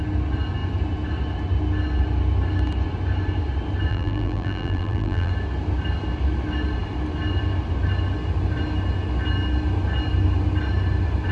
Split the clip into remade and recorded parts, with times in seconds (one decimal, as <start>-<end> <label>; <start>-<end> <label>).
0.0-3.9 recorded; 3.9-5.3 remade; 5.3-11.3 recorded